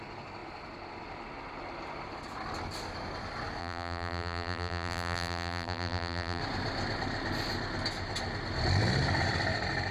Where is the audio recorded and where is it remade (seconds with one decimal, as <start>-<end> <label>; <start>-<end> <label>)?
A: 0.0-3.6 recorded; 3.6-6.4 remade; 6.4-9.9 recorded